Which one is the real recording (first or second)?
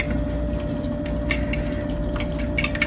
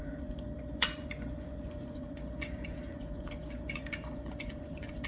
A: first